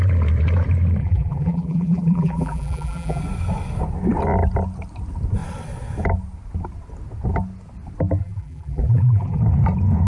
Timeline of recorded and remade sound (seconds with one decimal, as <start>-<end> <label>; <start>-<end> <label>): 0.0-1.0 recorded; 1.0-3.2 remade; 3.2-8.2 recorded; 8.2-9.4 remade; 9.4-10.1 recorded